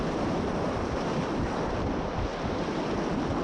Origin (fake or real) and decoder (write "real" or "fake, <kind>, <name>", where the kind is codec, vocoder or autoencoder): real